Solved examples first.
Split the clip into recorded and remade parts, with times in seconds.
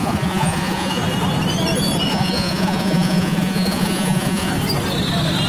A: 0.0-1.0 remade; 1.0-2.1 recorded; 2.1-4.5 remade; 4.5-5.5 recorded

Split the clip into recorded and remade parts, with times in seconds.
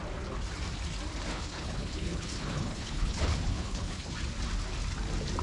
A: 0.0-1.3 recorded; 1.3-4.1 remade; 4.1-5.4 recorded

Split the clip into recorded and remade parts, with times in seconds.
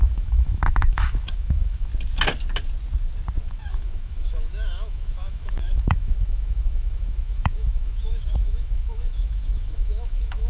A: 0.0-1.9 remade; 1.9-3.4 recorded; 3.4-10.5 remade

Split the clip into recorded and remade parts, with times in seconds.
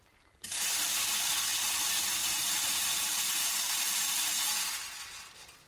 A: 0.0-2.2 recorded; 2.2-4.1 remade; 4.1-5.7 recorded